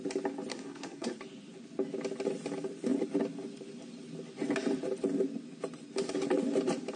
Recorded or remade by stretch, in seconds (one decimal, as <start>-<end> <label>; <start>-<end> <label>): 0.0-0.5 recorded; 0.5-1.2 remade; 1.2-7.0 recorded